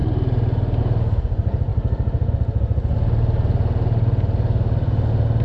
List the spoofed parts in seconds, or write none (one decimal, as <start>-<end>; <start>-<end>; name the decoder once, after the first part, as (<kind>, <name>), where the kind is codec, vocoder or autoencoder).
none